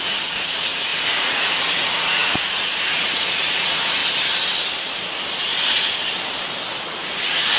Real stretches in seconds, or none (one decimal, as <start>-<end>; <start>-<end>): 4.0-6.8